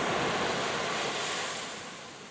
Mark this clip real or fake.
real